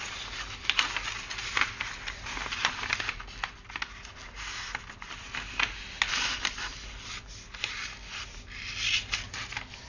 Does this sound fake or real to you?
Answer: real